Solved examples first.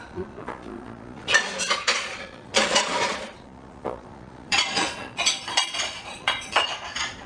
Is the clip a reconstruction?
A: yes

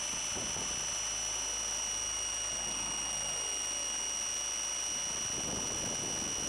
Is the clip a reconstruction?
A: no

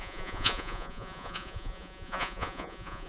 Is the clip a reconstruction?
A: yes